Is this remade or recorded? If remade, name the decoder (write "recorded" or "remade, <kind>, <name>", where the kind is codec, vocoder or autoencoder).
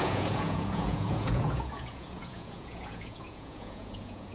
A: remade, vocoder, Vocos